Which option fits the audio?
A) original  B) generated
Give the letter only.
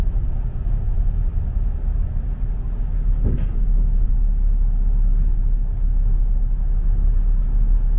A